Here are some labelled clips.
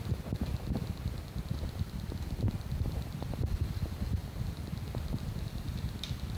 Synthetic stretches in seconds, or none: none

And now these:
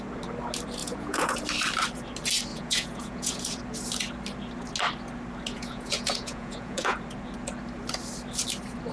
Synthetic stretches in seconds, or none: 0.8-1.4 (vocoder, Vocos); 2.5-3.6; 5.5-7.0

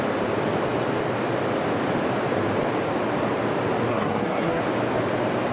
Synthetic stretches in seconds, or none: 3.9-4.6 (codec, SNAC)

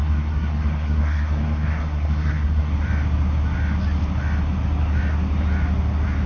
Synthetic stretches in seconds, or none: 0.0-2.7 (codec, SNAC)